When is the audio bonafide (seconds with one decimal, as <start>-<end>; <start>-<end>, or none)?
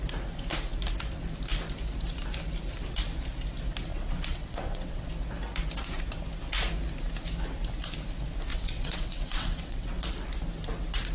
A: 0.0-3.9; 5.1-8.5; 10.0-11.1